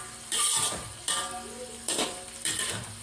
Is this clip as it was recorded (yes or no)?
no